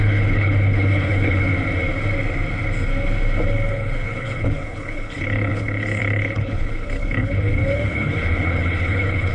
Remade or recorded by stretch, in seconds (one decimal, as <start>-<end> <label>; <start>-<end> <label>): 0.0-1.5 remade; 1.5-3.7 recorded; 3.7-9.3 remade